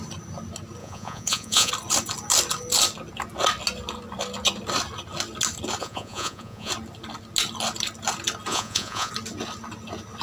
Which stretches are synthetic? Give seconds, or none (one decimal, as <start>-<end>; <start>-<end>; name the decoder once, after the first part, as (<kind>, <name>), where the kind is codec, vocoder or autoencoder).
0.8-1.7 (vocoder, Vocos); 5.8-6.7; 8.5-9.1